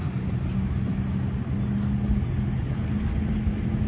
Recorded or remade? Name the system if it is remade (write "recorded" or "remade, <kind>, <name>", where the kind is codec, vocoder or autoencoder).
recorded